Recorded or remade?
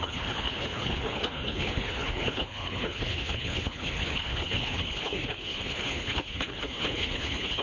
remade